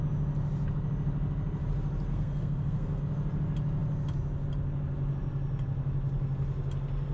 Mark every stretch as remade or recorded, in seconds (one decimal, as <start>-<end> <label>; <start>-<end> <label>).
0.0-2.1 recorded; 2.1-3.0 remade; 3.0-7.1 recorded